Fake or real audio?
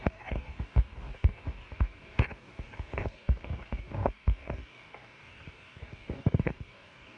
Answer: fake